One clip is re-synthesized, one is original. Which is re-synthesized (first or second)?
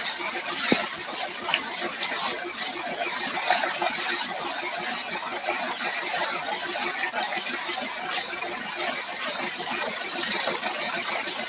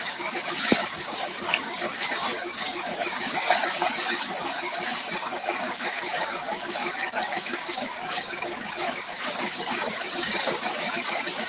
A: second